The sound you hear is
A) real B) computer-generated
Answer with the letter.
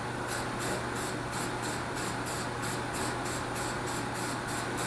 A